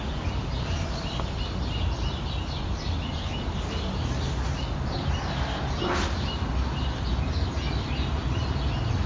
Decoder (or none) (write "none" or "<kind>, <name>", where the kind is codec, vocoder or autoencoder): none